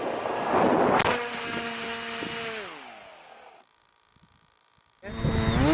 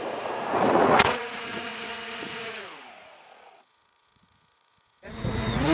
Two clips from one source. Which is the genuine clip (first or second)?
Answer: first